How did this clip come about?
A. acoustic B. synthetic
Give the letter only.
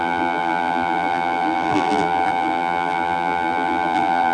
B